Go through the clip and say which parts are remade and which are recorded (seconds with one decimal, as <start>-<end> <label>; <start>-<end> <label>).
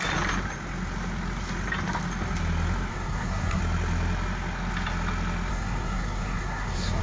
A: 0.0-2.9 recorded; 2.9-3.6 remade; 3.6-5.5 recorded; 5.5-7.0 remade